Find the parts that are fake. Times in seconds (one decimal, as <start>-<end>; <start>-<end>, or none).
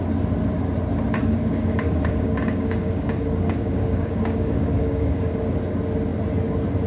1.2-5.3